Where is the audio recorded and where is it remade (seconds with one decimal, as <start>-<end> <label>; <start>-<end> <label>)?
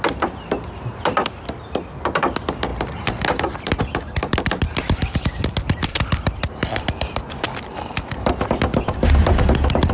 0.0-1.2 recorded; 1.2-2.0 remade; 2.0-2.7 recorded; 2.7-3.8 remade; 3.8-5.9 recorded; 5.9-7.6 remade; 7.6-9.9 recorded